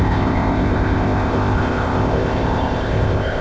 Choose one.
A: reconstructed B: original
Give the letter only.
A